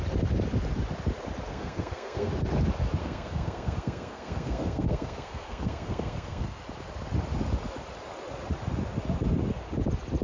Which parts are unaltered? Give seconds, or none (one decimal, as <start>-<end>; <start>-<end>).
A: 0.0-1.5; 2.3-3.0; 6.6-10.2